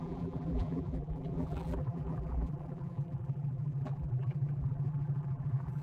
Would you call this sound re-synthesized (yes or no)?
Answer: yes